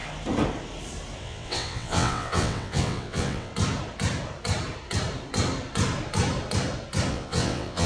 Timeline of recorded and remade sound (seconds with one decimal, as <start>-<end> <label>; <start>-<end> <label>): 0.0-1.2 recorded; 1.2-3.5 remade; 3.5-7.1 recorded; 7.1-7.9 remade